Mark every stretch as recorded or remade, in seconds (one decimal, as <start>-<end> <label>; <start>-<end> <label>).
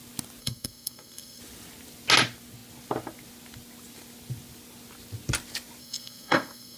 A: 0.0-0.4 recorded; 0.4-1.4 remade; 1.4-5.8 recorded; 5.8-6.8 remade